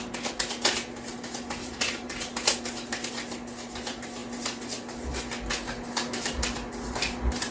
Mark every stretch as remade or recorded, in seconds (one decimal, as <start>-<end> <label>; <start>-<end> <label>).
0.0-1.6 recorded; 1.6-2.3 remade; 2.3-7.5 recorded